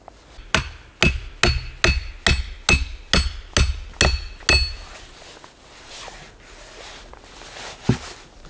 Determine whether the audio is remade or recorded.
recorded